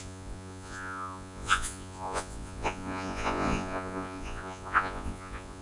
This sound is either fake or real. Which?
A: fake